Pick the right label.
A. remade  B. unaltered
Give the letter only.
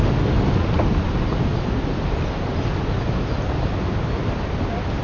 B